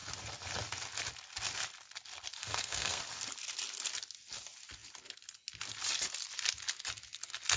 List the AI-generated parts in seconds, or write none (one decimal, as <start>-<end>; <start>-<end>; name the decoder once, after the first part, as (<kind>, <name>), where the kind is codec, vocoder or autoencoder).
2.4-3.0 (codec, SNAC)